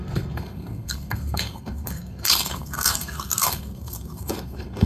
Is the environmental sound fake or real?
fake